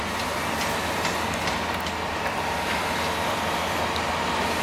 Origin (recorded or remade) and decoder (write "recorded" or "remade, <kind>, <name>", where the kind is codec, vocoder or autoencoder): recorded